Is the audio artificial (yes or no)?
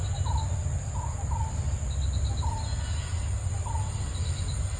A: no